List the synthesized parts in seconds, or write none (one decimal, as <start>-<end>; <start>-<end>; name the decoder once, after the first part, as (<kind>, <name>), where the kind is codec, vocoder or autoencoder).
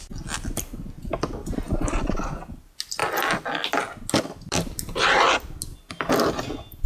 none